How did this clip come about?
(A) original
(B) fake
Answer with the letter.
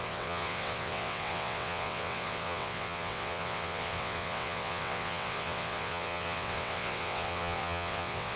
B